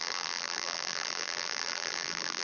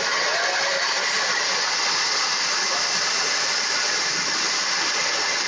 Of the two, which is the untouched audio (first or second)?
second